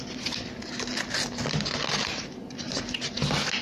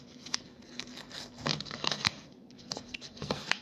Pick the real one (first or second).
first